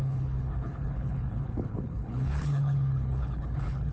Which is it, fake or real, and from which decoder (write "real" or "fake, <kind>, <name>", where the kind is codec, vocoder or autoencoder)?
fake, codec, HILCodec